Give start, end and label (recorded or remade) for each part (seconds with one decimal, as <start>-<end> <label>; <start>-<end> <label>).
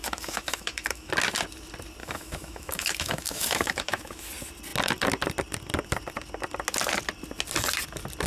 0.0-1.1 remade; 1.1-2.0 recorded; 2.0-4.3 remade; 4.3-8.3 recorded